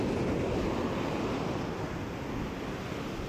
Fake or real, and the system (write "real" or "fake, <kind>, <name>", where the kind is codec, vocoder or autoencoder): real